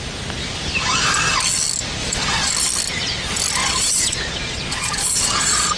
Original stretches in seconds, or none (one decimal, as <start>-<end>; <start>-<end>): 0.0-2.0; 2.5-3.6